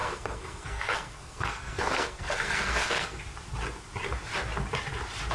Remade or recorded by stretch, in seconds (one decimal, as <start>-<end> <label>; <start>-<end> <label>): 0.0-3.2 remade; 3.2-5.3 recorded